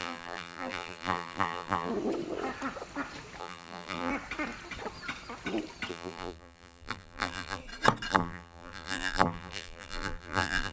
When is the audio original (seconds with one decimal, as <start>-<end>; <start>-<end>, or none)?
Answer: 1.9-3.4; 4.1-5.9; 7.6-8.1